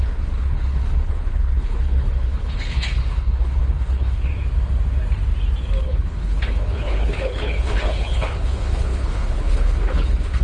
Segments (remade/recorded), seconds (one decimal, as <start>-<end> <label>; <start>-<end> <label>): 0.0-4.3 remade; 4.3-5.8 recorded; 5.8-10.4 remade